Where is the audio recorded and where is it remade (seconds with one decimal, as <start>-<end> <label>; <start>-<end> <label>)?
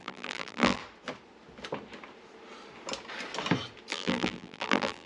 0.0-0.8 remade; 0.8-3.9 recorded; 3.9-5.1 remade